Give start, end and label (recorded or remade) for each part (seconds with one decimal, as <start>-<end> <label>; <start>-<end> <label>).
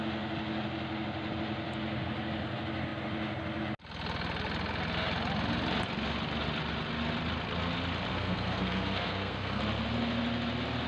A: 0.0-8.1 recorded; 8.1-9.6 remade; 9.6-10.9 recorded